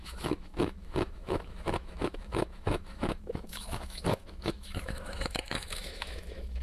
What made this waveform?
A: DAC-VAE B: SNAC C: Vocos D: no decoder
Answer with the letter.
A